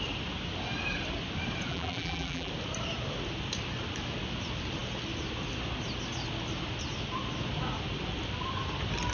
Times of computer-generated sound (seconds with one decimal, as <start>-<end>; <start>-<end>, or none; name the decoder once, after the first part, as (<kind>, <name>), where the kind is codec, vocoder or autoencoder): 1.7-2.5 (vocoder, BigVGAN v2)